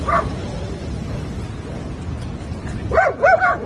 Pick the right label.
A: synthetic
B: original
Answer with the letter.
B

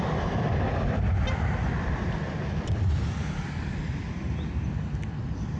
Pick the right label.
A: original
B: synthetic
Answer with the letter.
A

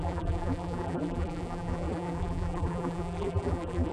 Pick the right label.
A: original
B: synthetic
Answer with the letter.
B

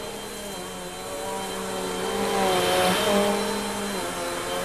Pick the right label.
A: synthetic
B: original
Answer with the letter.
B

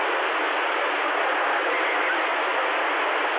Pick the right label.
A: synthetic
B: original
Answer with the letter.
B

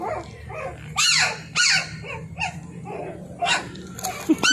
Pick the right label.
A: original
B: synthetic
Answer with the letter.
A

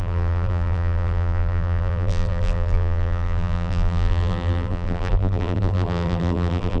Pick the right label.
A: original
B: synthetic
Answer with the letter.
B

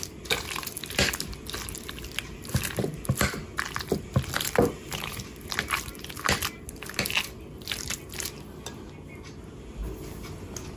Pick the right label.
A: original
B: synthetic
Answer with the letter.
A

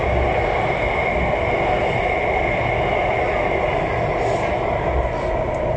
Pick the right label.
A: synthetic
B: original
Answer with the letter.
B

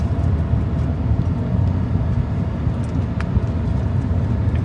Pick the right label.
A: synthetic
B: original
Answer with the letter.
B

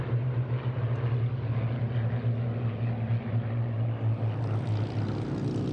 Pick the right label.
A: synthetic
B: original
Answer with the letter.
B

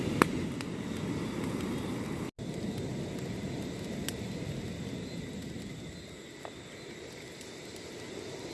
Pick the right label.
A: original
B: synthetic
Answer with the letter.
A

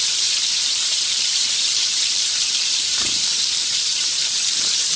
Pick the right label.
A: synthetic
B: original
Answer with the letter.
A